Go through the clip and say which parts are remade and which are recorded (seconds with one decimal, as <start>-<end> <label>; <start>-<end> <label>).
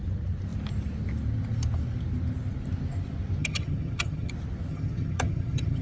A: 0.0-3.4 recorded; 3.4-4.3 remade; 4.3-4.7 recorded; 4.7-5.8 remade